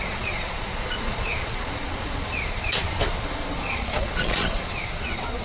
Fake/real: fake